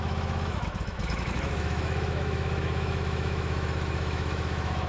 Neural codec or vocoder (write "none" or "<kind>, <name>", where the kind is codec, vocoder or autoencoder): autoencoder, DAC-VAE